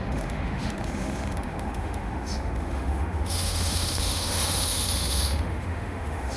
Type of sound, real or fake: fake